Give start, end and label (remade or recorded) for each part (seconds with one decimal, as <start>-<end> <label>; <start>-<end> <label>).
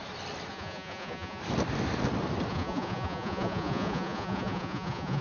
0.0-0.5 recorded; 0.5-1.4 remade; 1.4-2.5 recorded; 2.5-5.2 remade